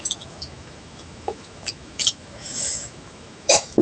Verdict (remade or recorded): remade